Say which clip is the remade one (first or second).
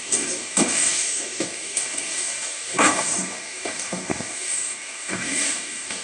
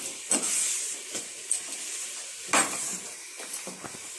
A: first